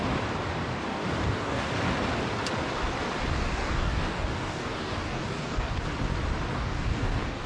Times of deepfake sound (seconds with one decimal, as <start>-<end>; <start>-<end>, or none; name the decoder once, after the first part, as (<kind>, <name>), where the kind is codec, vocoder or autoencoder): 0.9-1.7 (codec, DAC); 3.3-5.8; 6.5-7.5